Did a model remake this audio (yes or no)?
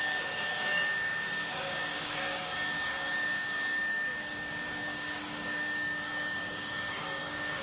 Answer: yes